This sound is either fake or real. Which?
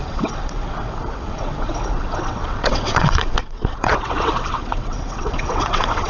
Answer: fake